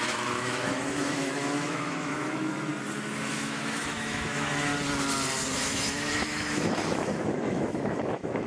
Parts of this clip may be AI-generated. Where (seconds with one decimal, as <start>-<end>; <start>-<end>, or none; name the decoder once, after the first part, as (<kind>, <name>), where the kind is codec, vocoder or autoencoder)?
0.0-2.7 (autoencoder, DAC-VAE); 3.3-4.7; 5.5-8.5